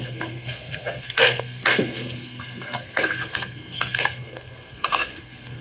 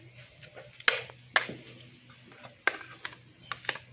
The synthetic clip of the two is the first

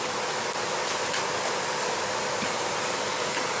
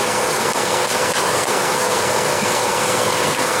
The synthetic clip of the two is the second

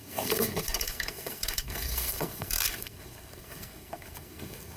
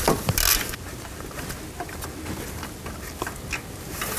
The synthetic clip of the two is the first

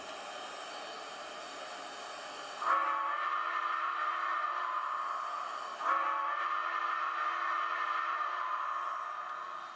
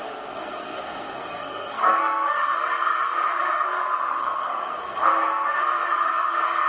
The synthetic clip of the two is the second